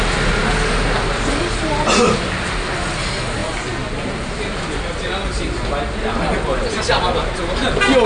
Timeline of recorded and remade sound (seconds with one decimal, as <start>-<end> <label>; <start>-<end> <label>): 0.0-8.1 recorded